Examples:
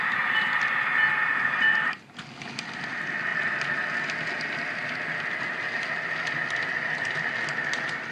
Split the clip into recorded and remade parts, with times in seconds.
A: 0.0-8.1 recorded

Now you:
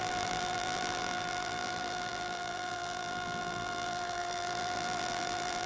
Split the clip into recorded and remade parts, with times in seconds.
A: 0.0-5.7 remade

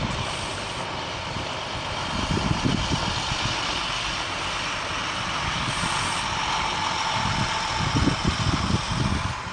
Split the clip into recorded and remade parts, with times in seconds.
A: 0.0-9.5 recorded

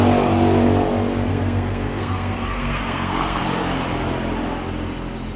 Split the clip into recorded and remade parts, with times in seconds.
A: 0.0-1.3 recorded; 1.3-3.4 remade; 3.4-5.4 recorded